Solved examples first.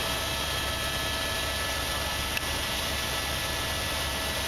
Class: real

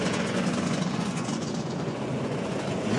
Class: fake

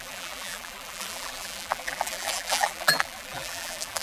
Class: fake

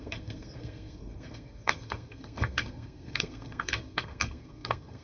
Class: fake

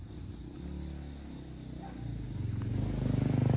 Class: real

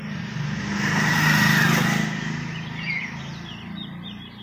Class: real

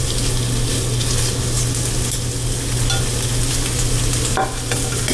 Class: real